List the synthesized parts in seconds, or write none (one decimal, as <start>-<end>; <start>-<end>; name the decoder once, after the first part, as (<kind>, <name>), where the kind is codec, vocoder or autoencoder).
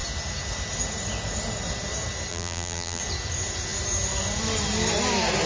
2.3-3.0 (vocoder, BigVGAN v2)